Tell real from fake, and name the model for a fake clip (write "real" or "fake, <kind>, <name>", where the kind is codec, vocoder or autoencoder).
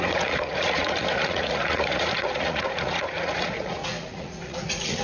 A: fake, vocoder, Vocos